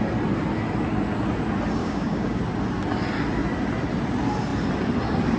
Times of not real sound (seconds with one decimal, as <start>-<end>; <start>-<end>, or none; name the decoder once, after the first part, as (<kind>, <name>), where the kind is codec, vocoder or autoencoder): 1.8-2.4 (codec, DAC)

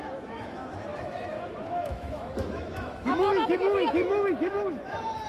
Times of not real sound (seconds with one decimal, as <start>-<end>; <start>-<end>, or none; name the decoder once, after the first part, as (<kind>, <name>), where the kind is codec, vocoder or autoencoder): 0.0-5.3 (autoencoder, DAC-VAE)

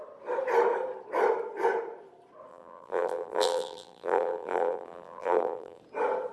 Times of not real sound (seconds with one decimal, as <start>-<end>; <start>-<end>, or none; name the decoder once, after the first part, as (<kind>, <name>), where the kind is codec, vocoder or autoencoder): 2.5-5.8 (vocoder, BigVGAN v2)

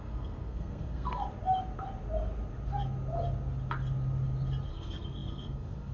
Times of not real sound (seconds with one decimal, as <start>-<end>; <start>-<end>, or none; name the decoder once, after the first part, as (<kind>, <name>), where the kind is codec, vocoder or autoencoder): 0.0-1.2 (codec, SNAC); 4.7-5.9

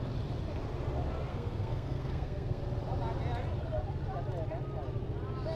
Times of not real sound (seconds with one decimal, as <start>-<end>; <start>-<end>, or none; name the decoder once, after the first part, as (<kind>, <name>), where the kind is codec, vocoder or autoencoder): 1.3-2.6 (codec, SNAC)

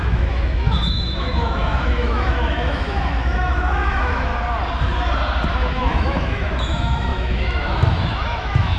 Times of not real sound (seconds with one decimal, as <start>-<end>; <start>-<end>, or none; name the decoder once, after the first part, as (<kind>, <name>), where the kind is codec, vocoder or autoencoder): 0.0-4.3 (autoencoder, DAC-VAE); 5.5-8.8

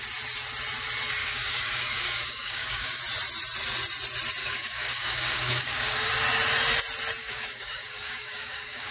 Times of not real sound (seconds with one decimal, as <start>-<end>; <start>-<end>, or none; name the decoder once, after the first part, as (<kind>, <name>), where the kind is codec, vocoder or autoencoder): 1.2-3.0 (codec, DAC); 4.4-6.1; 7.2-8.9